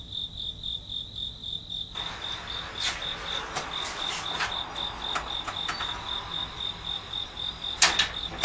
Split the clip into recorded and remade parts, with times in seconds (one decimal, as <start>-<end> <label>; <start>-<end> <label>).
0.0-8.4 recorded